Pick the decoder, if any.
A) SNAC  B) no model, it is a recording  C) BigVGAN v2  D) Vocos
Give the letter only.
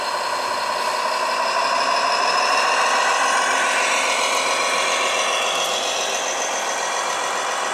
B